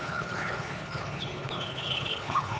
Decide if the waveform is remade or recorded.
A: remade